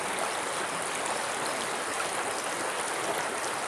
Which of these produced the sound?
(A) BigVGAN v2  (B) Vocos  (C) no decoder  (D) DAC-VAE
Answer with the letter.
C